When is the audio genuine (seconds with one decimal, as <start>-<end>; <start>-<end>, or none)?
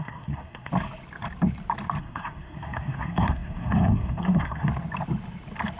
0.7-2.0; 4.7-5.8